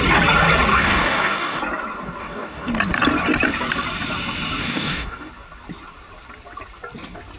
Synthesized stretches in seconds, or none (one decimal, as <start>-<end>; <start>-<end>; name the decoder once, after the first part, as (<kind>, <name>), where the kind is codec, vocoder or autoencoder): 0.7-1.6 (codec, DAC); 2.2-2.7; 4.6-5.3

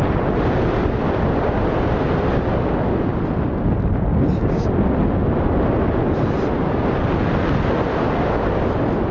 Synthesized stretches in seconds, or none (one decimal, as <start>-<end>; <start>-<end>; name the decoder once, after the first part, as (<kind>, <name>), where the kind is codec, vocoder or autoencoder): 4.1-4.7 (codec, DAC)

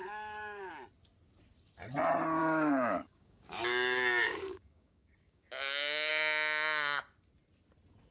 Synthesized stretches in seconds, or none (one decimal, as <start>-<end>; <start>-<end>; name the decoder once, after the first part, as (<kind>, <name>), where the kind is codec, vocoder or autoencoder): 0.0-0.7 (codec, DAC); 2.4-6.1

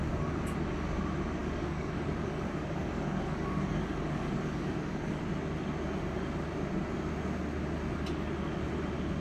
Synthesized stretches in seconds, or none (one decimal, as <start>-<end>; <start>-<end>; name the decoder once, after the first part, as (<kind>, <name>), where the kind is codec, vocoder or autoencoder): 1.4-5.2 (codec, DAC)

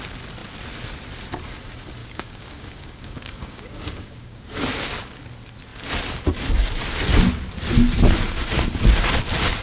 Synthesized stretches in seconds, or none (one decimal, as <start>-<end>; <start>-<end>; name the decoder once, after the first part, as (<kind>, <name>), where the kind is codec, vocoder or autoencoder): 2.0-4.4 (codec, DAC)